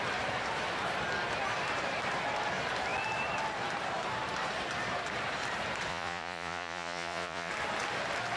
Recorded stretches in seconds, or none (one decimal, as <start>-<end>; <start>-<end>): 0.0-5.9; 7.5-8.4